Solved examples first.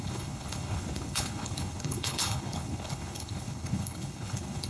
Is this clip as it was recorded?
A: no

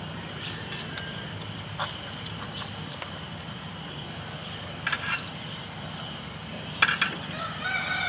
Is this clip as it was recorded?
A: yes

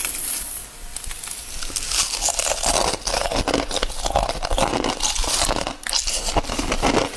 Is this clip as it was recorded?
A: yes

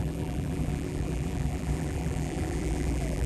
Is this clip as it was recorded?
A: no